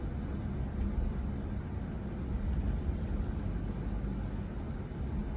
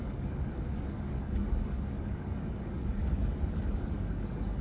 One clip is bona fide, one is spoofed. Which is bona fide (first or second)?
first